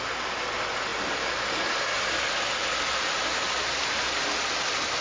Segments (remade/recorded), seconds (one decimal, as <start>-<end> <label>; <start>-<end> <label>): 0.0-5.0 recorded